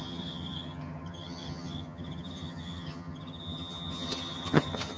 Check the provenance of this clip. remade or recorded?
remade